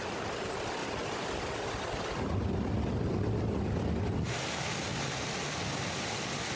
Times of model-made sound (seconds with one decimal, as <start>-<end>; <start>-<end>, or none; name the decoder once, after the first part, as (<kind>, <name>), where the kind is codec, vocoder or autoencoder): 0.8-1.3 (vocoder, BigVGAN v2)